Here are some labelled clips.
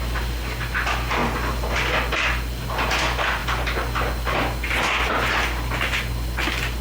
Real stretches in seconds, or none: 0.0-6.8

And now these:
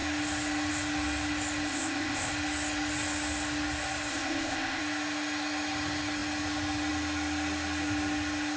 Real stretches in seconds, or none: 0.0-1.7; 2.3-4.1; 4.8-8.6

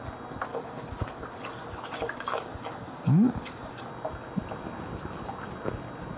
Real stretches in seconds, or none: 0.0-0.5; 3.9-6.2

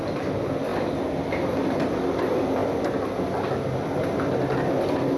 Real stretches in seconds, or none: 0.0-5.2